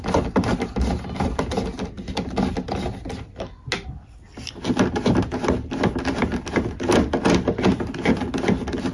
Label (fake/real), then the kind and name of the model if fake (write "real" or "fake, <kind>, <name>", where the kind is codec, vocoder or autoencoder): real